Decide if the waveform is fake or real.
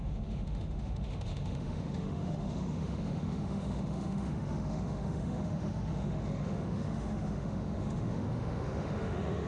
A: fake